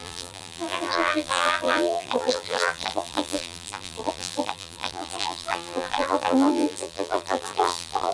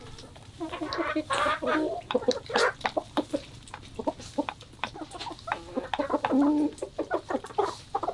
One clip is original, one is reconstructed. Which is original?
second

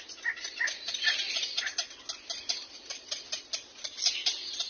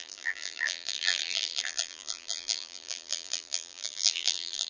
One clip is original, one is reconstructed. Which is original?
first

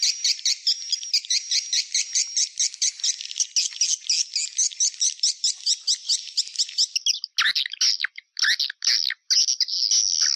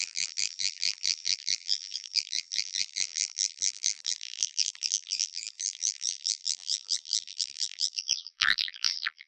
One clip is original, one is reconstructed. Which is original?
first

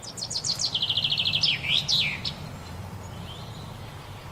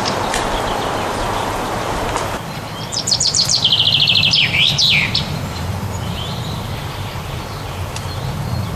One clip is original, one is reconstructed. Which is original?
first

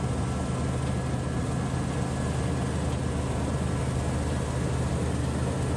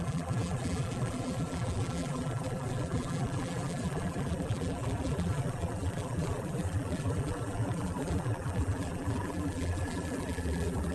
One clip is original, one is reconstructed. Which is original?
first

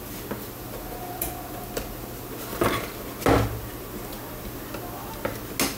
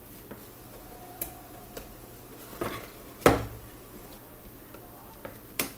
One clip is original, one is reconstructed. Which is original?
first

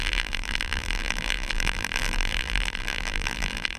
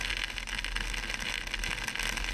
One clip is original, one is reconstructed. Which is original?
second